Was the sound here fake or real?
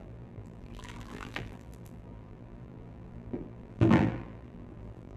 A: fake